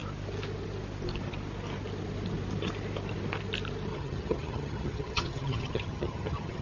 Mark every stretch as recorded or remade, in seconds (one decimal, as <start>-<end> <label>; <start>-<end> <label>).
0.0-3.9 recorded; 3.9-6.6 remade